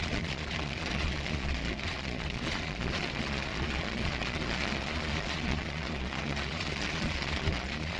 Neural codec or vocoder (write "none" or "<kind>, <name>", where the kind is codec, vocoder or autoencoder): vocoder, Vocos